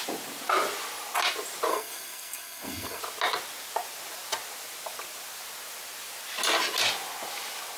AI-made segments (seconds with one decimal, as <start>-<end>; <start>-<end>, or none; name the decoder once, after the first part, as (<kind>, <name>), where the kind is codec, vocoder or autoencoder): 1.7-3.0 (codec, SNAC)